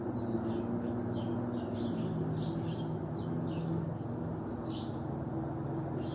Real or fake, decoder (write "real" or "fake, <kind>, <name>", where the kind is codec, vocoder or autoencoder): real